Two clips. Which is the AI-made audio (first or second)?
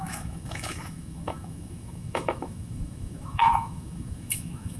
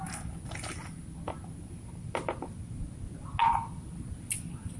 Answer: first